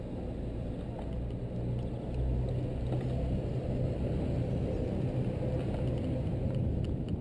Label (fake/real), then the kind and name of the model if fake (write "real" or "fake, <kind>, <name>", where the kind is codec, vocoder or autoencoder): real